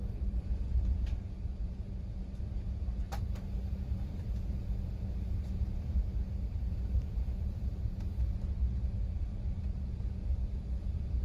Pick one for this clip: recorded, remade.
remade